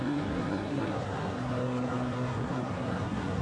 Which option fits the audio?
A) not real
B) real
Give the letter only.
A